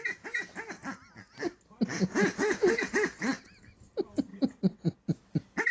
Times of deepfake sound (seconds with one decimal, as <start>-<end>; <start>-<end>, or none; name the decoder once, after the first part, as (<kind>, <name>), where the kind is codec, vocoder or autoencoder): 2.4-3.3 (vocoder, WaveNeXt); 4.3-4.8

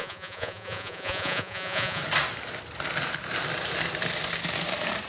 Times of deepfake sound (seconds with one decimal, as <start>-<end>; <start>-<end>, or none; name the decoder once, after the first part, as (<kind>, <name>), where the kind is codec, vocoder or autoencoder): 0.0-2.0 (vocoder, Vocos)

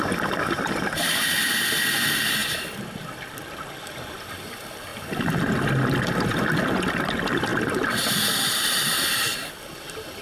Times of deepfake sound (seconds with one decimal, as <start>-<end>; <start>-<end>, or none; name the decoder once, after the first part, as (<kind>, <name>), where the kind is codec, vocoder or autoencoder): 2.4-3.5 (vocoder, BigVGAN v2)

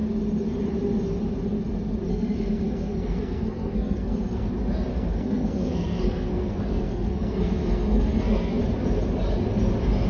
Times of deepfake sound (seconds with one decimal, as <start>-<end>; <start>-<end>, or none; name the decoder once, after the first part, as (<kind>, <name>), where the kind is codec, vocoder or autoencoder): 2.1-4.5 (codec, SNAC); 4.9-8.6

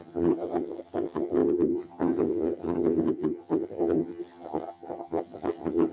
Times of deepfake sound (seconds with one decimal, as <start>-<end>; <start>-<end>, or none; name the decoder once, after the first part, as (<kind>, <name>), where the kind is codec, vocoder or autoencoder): 0.0-5.9 (vocoder, HiFi-GAN)

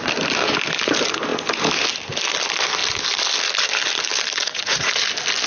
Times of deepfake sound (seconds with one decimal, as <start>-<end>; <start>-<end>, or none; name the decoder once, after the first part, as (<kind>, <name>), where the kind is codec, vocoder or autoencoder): 4.4-4.9 (vocoder, Vocos)